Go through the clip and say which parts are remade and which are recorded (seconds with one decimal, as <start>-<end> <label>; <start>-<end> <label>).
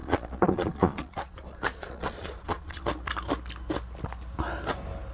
0.0-2.8 remade; 2.8-5.1 recorded